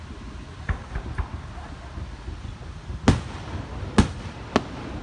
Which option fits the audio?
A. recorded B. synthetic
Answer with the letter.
A